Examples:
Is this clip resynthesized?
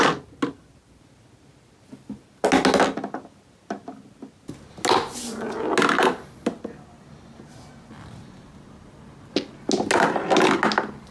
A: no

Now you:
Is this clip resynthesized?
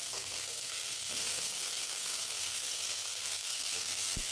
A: yes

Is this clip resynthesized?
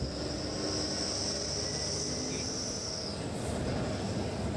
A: no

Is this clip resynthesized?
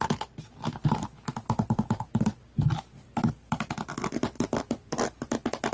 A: no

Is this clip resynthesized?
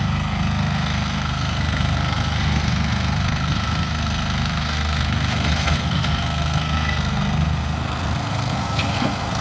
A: yes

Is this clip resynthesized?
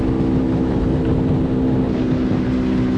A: no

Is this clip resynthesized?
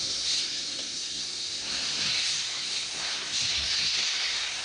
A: yes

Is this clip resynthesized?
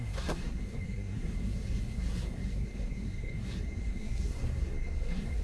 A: yes